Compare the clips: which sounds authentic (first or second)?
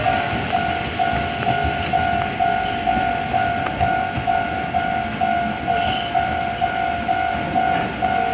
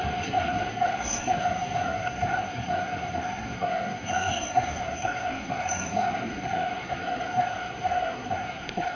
first